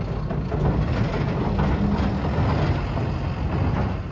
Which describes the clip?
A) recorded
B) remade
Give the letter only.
A